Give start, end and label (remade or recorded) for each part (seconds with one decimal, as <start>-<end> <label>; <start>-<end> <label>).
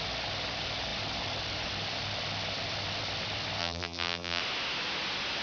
0.0-3.6 recorded; 3.6-4.4 remade; 4.4-5.4 recorded